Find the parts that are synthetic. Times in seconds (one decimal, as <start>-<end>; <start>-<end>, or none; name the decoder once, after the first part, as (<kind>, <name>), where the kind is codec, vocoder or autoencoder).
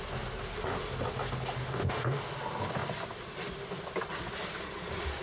1.6-2.2 (autoencoder, DAC-VAE)